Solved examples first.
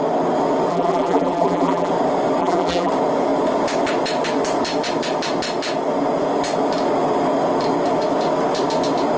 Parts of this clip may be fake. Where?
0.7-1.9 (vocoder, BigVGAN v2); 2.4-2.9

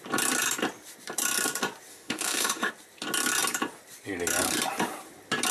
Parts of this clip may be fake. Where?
1.9-2.7 (autoencoder, DAC-VAE)